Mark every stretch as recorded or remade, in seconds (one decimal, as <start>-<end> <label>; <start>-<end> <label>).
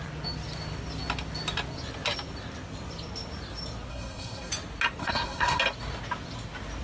0.0-3.9 recorded; 3.9-4.5 remade; 4.5-5.0 recorded; 5.0-5.6 remade; 5.6-6.8 recorded